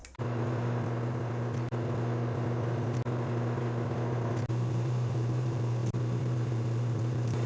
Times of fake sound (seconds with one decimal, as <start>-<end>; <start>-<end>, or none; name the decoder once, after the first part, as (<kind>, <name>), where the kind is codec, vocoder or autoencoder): 4.5-7.5 (vocoder, BigVGAN v2)